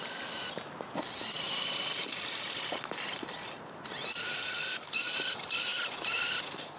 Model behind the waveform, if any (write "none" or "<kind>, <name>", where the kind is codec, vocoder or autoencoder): none